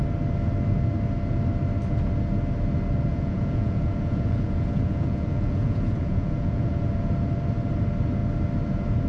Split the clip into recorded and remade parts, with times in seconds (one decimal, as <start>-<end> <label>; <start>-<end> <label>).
0.0-3.1 recorded; 3.1-7.1 remade; 7.1-9.1 recorded